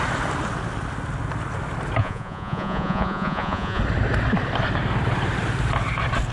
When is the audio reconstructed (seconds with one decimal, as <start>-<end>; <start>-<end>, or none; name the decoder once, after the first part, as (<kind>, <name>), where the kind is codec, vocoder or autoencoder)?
2.0-3.8 (vocoder, Vocos)